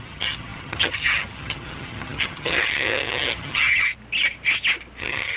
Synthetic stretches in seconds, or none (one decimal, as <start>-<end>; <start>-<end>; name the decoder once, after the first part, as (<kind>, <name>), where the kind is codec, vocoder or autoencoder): 0.0-3.9 (vocoder, HiFi-GAN); 5.0-5.4